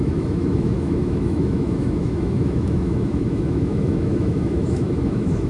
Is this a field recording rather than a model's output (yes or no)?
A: no